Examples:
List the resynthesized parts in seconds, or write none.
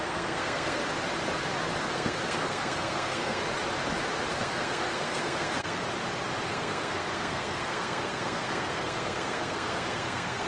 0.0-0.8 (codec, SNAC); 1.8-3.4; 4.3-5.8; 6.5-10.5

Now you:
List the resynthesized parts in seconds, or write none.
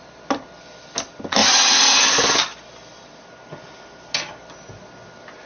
none